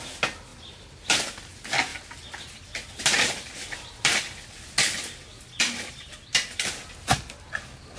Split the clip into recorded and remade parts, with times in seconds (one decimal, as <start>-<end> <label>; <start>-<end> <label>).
0.0-8.0 recorded